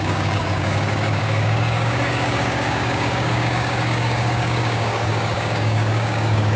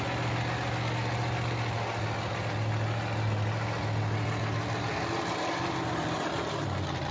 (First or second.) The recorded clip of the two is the second